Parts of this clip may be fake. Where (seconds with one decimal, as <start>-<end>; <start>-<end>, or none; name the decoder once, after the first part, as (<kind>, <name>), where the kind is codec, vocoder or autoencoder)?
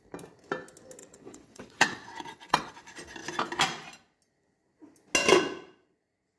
1.0-2.7 (vocoder, WaveNeXt)